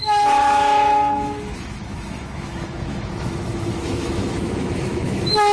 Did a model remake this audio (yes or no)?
yes